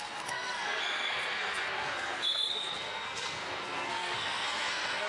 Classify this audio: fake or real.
fake